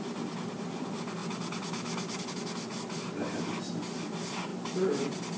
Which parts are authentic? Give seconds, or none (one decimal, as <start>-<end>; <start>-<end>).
0.0-5.4